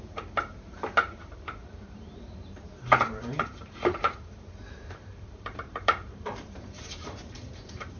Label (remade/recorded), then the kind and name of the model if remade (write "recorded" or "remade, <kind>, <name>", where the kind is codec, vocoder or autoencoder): remade, vocoder, BigVGAN v2